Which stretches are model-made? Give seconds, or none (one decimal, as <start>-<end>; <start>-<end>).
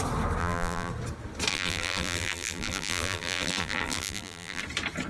0.4-0.9; 1.5-4.6